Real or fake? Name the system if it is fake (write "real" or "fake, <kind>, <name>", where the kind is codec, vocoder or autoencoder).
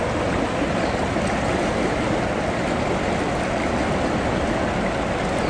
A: real